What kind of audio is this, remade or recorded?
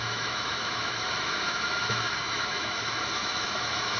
remade